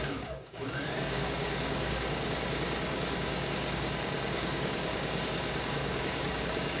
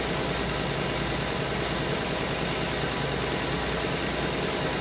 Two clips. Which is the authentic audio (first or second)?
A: second